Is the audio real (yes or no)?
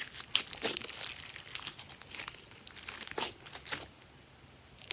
yes